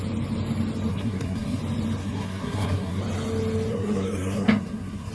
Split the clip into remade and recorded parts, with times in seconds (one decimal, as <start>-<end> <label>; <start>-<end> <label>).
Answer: 0.0-0.9 recorded; 0.9-1.6 remade; 1.6-2.0 recorded; 2.0-3.0 remade; 3.0-3.7 recorded; 3.7-5.1 remade